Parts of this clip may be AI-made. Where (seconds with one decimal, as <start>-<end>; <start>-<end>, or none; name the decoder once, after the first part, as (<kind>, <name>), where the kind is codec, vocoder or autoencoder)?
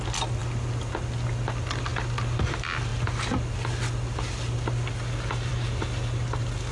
none